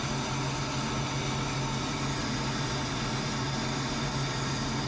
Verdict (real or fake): real